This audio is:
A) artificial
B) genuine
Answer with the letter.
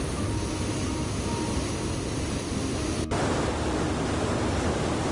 B